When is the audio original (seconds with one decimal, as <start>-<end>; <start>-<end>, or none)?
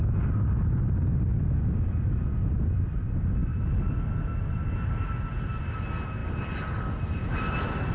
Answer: 0.0-7.9